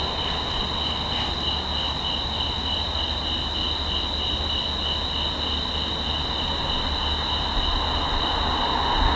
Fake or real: real